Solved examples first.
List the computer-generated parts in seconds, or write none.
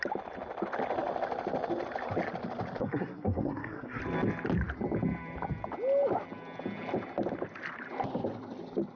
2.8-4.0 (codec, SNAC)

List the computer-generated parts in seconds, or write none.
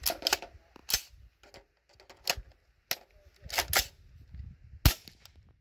none